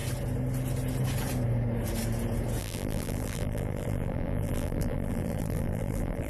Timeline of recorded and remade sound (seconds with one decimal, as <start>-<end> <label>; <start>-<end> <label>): 0.0-2.6 recorded; 2.6-6.3 remade